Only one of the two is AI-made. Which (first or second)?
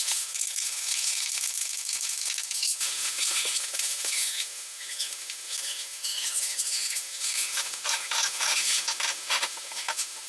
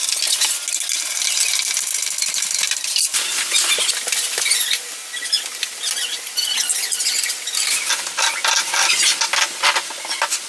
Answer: first